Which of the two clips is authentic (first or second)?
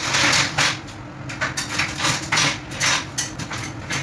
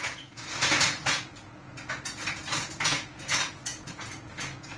first